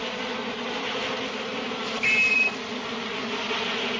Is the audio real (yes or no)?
yes